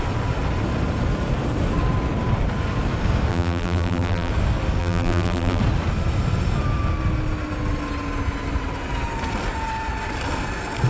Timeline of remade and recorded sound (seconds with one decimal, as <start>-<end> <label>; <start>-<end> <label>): 0.0-3.3 recorded; 3.3-4.3 remade; 4.3-4.8 recorded; 4.8-5.6 remade; 5.6-10.9 recorded

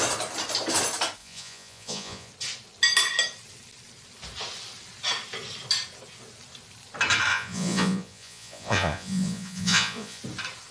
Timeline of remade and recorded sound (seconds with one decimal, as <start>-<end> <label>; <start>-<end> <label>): 0.0-1.2 recorded; 1.2-2.3 remade; 2.3-7.3 recorded; 7.3-10.2 remade; 10.2-10.7 recorded

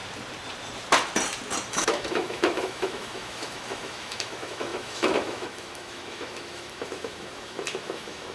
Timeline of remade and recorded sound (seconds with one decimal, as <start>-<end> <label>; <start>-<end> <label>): 0.0-1.7 recorded; 1.7-8.3 remade

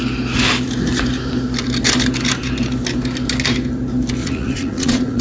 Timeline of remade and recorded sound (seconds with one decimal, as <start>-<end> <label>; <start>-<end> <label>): 0.0-4.2 recorded; 4.2-5.2 remade

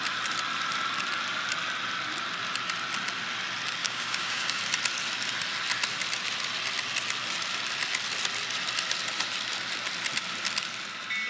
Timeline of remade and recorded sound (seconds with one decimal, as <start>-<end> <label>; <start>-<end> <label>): 0.0-3.8 recorded; 3.8-4.6 remade; 4.6-11.3 recorded

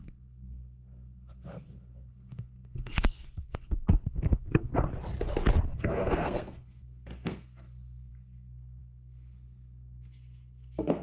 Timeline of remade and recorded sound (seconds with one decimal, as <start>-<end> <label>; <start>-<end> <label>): 0.0-4.7 remade; 4.7-5.8 recorded; 5.8-11.0 remade

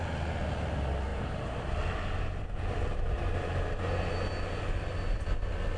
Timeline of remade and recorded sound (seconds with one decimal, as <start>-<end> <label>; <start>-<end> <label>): 0.0-5.8 recorded